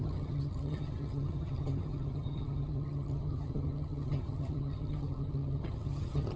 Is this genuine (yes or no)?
no